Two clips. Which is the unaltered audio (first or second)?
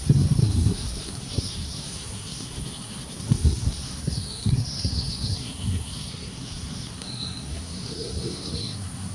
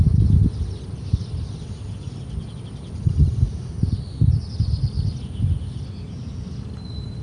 second